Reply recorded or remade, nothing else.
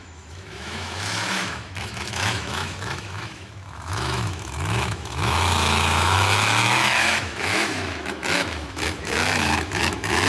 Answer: remade